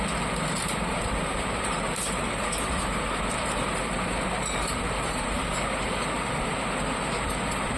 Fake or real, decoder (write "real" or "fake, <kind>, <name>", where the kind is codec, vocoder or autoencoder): fake, vocoder, BigVGAN v2